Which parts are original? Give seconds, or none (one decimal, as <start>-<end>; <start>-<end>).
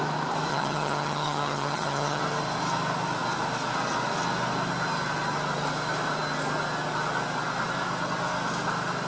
0.0-0.5; 2.2-9.1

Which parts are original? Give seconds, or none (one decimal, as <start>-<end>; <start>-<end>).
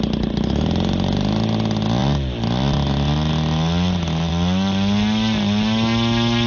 0.0-6.5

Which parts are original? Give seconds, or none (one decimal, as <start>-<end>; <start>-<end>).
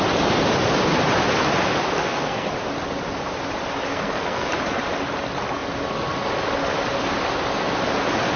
0.0-2.0; 2.5-3.9; 4.5-8.4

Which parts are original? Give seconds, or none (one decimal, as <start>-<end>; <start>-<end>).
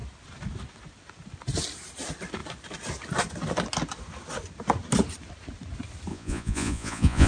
0.0-6.1